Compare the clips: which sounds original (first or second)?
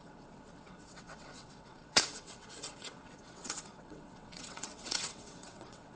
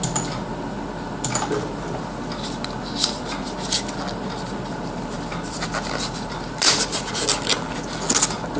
second